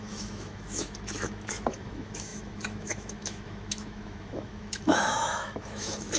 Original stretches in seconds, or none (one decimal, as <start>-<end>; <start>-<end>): none